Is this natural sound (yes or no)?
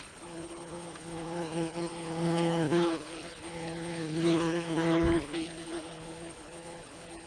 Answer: no